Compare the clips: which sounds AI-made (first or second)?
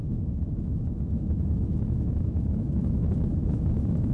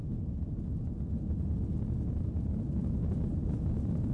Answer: first